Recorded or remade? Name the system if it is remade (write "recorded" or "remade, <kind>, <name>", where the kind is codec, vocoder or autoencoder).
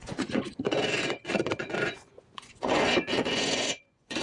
remade, vocoder, Vocos